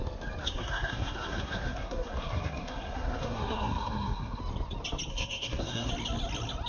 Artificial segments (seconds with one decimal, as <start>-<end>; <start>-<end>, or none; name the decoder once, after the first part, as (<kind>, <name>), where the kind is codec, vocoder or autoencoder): 0.4-4.4 (codec, SNAC); 5.1-5.9